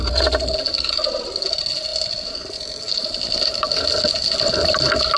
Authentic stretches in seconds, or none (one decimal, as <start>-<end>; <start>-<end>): 0.0-5.2